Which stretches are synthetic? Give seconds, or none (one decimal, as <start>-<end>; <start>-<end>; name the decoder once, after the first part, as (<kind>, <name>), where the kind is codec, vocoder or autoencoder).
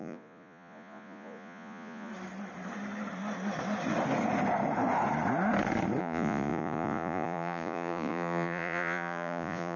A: 0.0-2.1 (vocoder, Vocos); 6.0-9.8